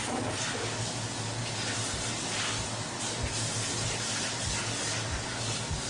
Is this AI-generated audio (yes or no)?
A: no